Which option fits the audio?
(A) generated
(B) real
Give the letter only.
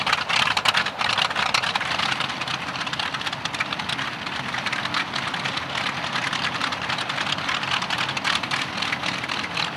A